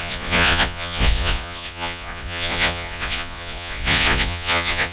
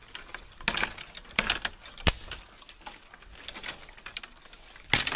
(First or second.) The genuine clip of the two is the second